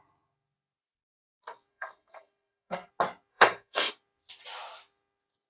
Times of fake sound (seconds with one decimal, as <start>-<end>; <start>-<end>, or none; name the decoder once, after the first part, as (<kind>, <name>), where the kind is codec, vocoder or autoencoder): 1.7-2.9 (codec, SNAC); 3.3-3.9